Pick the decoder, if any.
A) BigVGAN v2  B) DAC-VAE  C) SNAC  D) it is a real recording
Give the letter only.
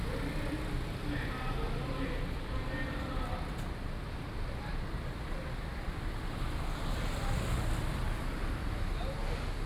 D